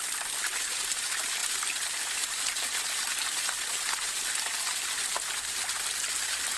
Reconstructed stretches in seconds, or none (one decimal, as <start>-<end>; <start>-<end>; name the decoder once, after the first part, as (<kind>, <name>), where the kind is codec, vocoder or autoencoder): none